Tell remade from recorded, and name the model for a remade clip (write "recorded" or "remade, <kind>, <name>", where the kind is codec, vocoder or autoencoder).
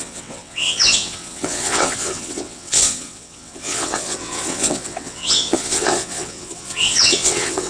remade, vocoder, WaveNeXt